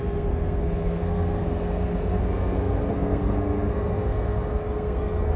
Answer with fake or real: fake